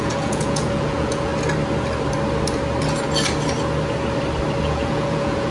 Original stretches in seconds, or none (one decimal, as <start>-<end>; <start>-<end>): 1.3-4.6